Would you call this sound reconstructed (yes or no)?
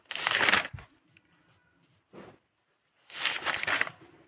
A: no